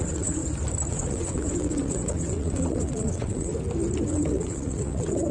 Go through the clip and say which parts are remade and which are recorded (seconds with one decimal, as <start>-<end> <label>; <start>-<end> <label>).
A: 0.0-0.4 remade; 0.4-0.9 recorded; 0.9-3.5 remade; 3.5-4.1 recorded; 4.1-5.3 remade